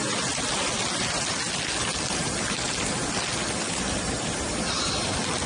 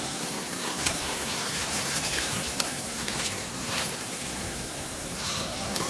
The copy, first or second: second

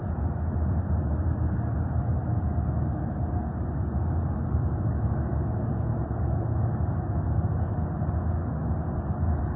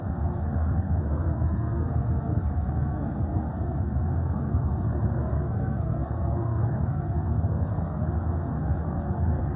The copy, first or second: second